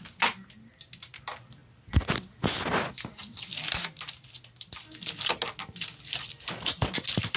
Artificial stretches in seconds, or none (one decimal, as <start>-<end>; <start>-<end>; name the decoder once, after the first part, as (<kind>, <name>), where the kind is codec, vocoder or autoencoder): none